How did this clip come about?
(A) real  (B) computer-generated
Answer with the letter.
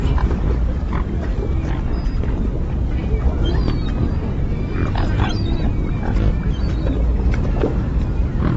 A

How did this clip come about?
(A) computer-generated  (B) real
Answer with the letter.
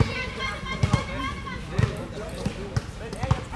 B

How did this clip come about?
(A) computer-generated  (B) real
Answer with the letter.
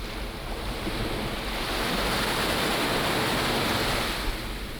B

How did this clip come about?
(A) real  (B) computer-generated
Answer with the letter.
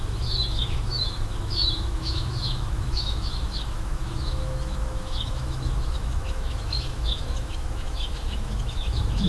B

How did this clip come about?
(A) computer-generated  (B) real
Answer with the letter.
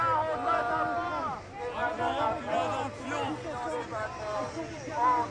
B